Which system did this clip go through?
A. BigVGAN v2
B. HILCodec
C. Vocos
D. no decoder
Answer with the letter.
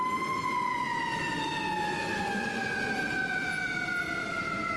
D